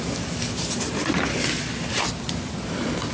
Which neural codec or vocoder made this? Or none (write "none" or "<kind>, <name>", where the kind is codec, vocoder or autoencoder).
none